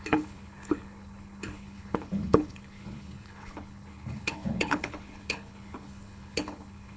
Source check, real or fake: fake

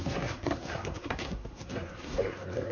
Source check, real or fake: fake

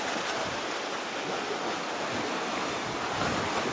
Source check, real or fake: real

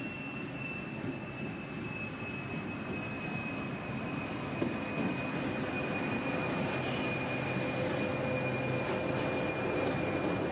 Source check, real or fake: real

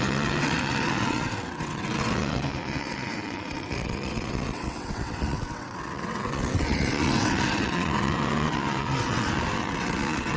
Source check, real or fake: fake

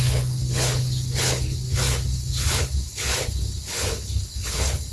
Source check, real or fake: fake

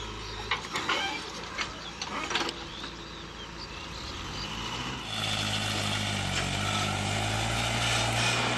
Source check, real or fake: real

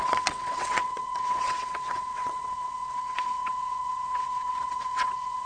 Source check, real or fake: fake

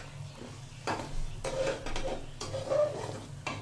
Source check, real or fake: real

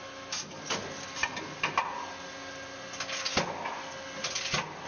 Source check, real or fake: real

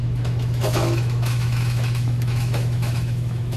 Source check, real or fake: fake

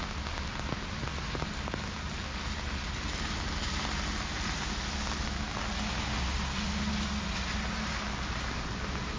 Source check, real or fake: real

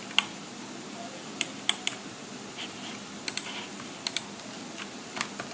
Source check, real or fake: real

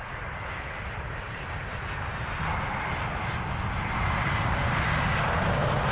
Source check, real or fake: real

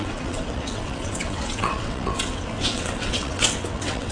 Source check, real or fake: fake